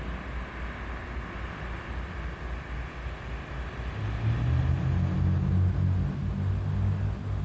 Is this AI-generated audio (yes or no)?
no